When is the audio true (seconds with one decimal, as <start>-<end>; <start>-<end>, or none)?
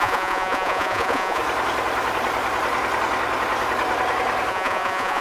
1.4-4.5